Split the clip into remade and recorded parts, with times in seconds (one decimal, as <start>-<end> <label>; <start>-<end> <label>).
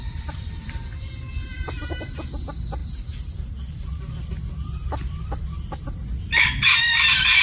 0.0-7.4 recorded